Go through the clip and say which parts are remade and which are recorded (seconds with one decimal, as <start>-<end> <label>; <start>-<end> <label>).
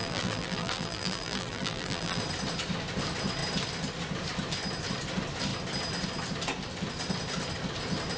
0.0-2.2 remade; 2.2-8.2 recorded